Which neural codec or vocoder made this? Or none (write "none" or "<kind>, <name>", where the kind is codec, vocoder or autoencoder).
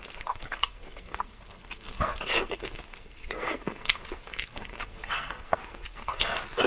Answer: codec, SNAC